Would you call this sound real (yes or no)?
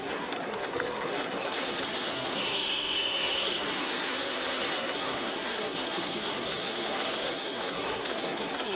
no